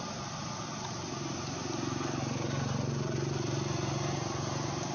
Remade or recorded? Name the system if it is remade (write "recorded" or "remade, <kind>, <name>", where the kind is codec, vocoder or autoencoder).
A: recorded